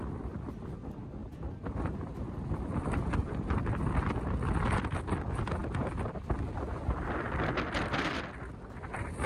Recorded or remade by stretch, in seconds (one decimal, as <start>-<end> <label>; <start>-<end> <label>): 0.0-1.2 recorded; 1.2-3.6 remade; 3.6-9.3 recorded